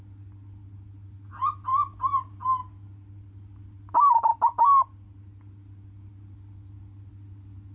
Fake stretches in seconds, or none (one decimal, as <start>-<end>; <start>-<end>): none